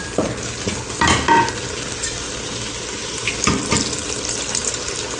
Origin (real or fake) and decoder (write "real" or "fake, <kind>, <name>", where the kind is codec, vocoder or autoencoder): real